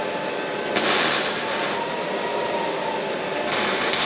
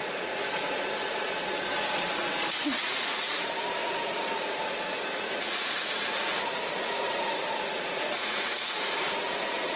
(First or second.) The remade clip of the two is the second